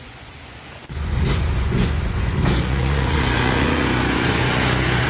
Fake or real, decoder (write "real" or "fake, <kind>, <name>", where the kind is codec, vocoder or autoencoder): fake, vocoder, Vocos